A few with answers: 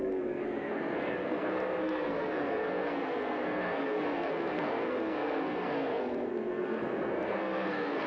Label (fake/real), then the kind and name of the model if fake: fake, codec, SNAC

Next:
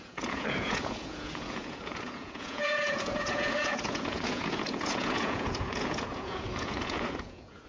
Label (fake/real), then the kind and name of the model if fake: fake, vocoder, Vocos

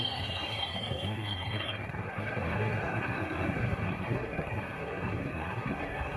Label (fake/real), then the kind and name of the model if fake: fake, codec, SNAC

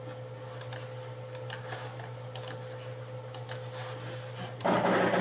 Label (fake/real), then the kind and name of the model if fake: real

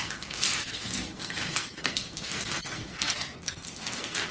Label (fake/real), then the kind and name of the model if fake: fake, codec, SNAC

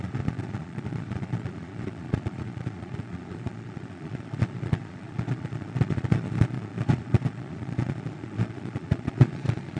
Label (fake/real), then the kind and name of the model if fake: fake, vocoder, Vocos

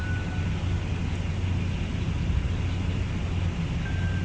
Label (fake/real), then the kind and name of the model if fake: real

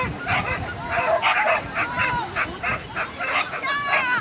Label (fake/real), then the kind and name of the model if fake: real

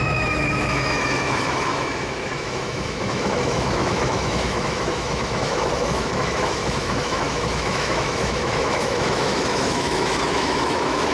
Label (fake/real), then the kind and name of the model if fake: fake, autoencoder, DAC-VAE